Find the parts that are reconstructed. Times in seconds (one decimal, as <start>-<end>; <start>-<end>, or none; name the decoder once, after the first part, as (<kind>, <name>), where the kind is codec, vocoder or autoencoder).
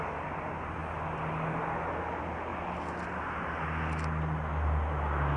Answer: none